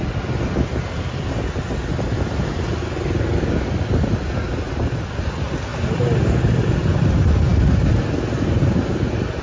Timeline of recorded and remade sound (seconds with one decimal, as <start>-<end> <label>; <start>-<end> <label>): 0.0-9.4 recorded